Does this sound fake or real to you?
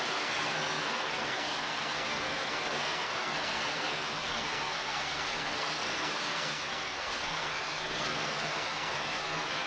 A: fake